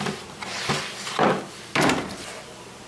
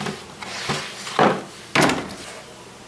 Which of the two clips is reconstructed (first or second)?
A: first